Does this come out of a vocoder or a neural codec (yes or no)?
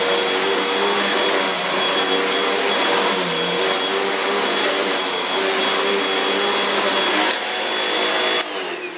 no